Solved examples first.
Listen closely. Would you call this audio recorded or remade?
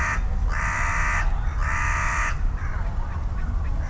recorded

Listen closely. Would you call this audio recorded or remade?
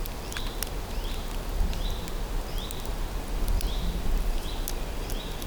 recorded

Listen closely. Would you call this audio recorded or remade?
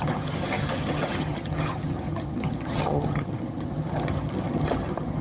remade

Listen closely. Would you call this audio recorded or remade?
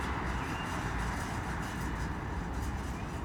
recorded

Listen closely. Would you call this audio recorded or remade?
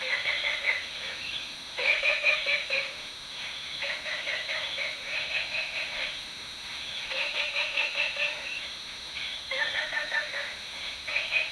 remade